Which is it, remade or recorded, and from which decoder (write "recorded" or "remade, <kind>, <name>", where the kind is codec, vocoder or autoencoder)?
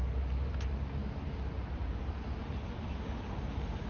recorded